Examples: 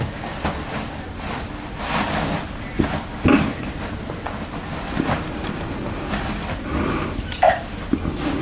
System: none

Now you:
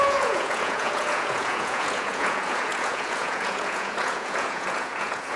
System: vocoder, Vocos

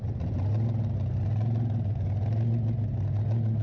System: none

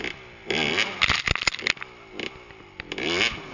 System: none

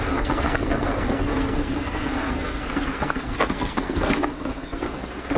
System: codec, SNAC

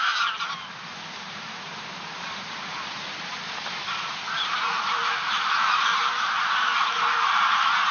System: vocoder, BigVGAN v2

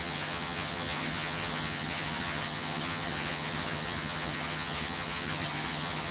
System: vocoder, HiFi-GAN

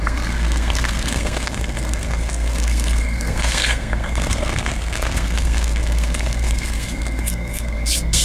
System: codec, SNAC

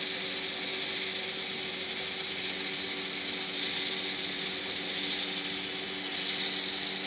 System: none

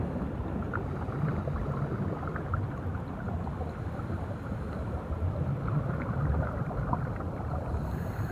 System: none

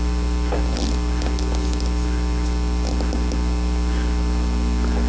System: none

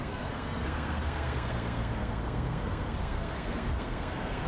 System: codec, SNAC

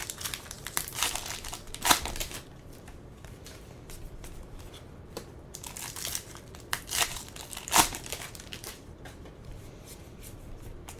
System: vocoder, BigVGAN v2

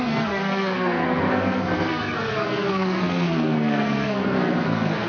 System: codec, SNAC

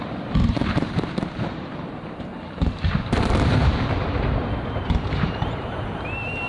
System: vocoder, BigVGAN v2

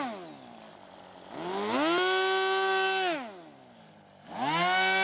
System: none